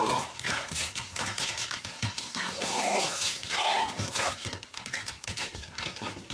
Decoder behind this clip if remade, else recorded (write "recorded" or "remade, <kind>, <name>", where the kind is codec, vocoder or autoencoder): remade, codec, SNAC